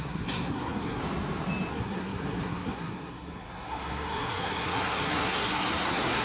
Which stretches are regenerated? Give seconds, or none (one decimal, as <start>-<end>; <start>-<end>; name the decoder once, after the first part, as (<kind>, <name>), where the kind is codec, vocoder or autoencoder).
0.0-1.0 (codec, SNAC); 1.7-6.2